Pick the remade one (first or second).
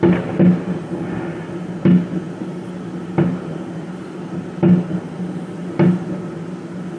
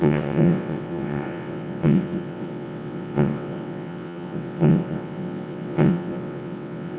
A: second